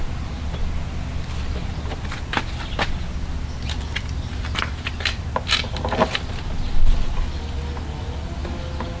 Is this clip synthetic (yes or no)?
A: no